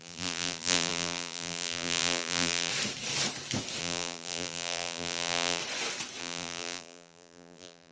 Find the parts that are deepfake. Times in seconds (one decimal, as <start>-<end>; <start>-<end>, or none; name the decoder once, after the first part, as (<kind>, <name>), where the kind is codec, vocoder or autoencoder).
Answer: 0.0-2.7 (vocoder, BigVGAN v2); 3.8-5.6; 6.2-7.9